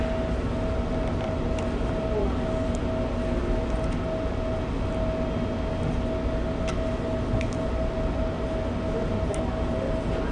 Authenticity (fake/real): real